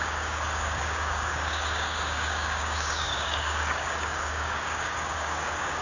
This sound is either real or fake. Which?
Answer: fake